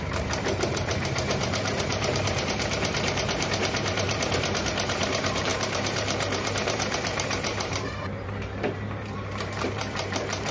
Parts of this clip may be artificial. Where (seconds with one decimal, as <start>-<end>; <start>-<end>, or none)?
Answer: 0.0-10.5